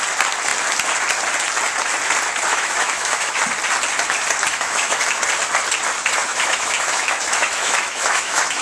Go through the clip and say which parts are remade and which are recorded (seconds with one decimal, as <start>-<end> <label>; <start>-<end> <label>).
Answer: 0.0-2.5 recorded; 2.5-3.4 remade; 3.4-4.5 recorded; 4.5-5.2 remade; 5.2-6.3 recorded; 6.3-8.6 remade